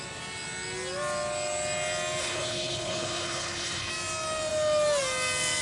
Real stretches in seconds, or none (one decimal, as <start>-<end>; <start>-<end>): 0.0-2.2; 3.9-5.6